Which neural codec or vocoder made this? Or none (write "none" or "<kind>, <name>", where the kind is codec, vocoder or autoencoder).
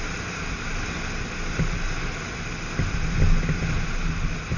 none